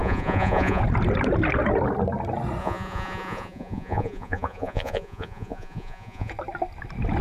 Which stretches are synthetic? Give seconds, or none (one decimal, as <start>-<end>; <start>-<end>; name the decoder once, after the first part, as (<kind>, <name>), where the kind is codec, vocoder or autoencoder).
0.0-0.8 (vocoder, Vocos); 2.6-6.3